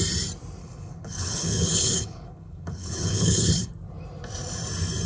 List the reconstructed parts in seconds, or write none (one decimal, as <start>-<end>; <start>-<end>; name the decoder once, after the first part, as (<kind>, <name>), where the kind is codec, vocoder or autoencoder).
0.6-3.7 (codec, HILCodec)